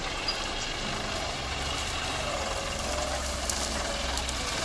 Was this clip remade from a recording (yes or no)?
no